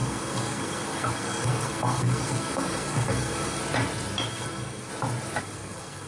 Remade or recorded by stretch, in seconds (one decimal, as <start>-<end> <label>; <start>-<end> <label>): 0.0-3.6 remade; 3.6-4.3 recorded; 4.3-4.9 remade; 4.9-5.4 recorded; 5.4-6.1 remade